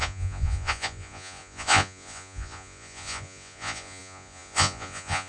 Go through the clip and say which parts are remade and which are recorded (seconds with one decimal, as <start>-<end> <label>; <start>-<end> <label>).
0.0-5.3 remade